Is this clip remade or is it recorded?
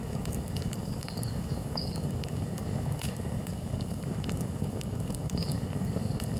remade